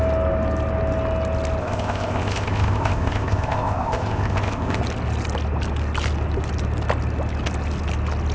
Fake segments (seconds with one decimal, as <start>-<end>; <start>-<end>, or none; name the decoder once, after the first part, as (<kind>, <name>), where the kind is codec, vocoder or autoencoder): 1.6-4.8 (codec, ZipCodec)